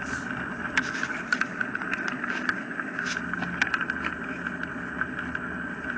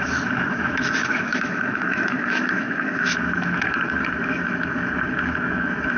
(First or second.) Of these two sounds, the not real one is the second